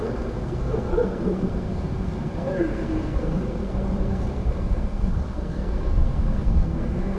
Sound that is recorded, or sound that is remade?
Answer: remade